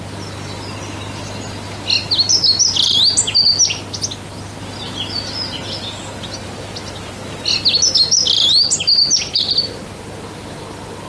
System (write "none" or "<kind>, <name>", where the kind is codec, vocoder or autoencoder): none